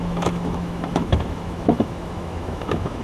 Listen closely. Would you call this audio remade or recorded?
remade